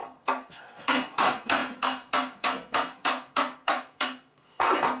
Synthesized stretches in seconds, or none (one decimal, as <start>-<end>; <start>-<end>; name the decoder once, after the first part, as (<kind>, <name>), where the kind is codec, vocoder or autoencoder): 0.0-5.0 (codec, SNAC)